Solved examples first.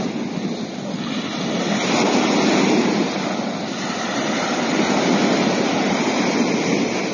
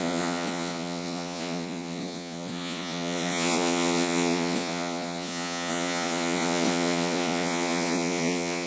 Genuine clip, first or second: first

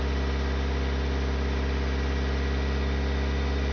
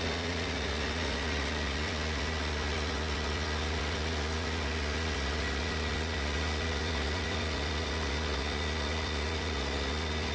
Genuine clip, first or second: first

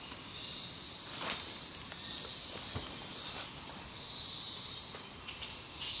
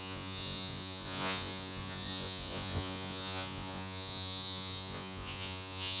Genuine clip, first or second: first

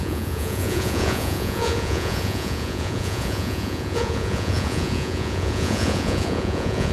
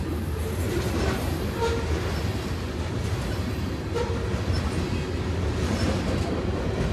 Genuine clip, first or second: second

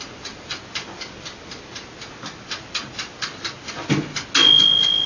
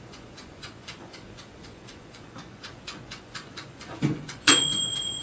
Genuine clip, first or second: first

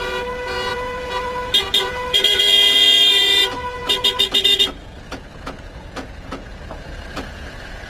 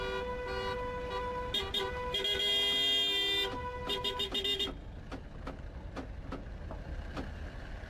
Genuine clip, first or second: second